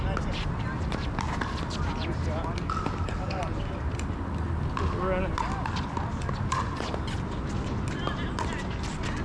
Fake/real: real